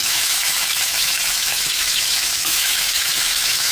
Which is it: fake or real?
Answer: fake